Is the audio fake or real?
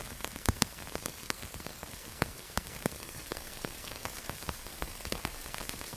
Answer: fake